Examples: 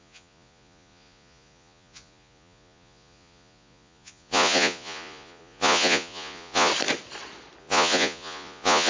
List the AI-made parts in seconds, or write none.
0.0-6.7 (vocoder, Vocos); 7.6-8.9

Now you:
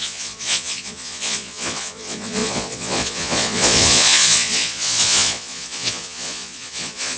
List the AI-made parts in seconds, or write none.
0.0-7.2 (vocoder, Vocos)

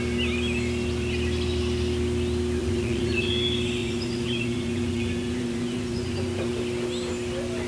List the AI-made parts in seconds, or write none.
2.6-3.3 (vocoder, Vocos); 3.8-6.5

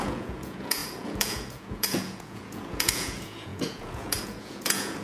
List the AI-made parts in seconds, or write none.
0.0-5.0 (vocoder, Vocos)

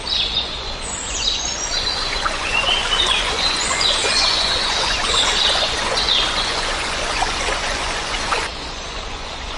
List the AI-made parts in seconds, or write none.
0.0-9.6 (vocoder, Vocos)

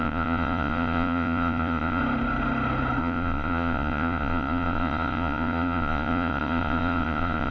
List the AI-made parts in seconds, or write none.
0.0-2.0 (vocoder, Vocos); 3.0-7.5

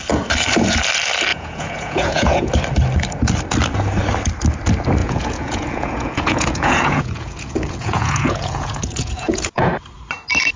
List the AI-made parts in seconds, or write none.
1.3-2.5 (vocoder, Vocos); 5.0-9.7